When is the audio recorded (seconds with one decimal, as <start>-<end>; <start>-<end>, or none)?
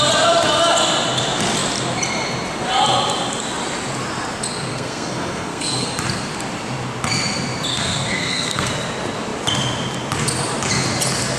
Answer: 0.0-4.7; 5.9-7.7; 8.7-11.4